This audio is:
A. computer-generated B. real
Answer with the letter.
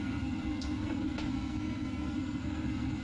A